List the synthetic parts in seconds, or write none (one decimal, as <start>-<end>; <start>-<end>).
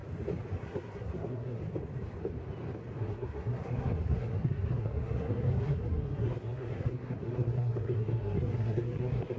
0.6-1.6; 3.0-9.4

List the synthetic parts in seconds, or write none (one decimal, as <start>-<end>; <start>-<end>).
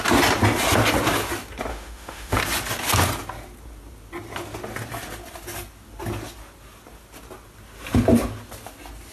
1.7-2.4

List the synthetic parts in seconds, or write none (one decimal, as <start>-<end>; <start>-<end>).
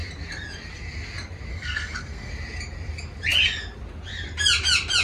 1.5-2.3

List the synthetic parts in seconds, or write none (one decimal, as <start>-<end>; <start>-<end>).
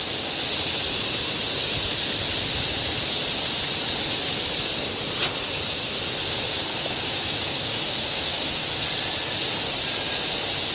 6.7-8.7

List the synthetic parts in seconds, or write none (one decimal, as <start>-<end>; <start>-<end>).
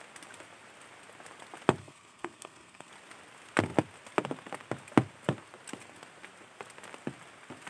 1.8-2.9